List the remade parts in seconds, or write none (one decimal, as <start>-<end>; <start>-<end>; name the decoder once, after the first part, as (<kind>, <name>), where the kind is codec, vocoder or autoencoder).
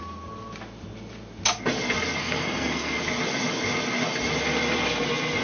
2.2-3.0 (codec, SNAC)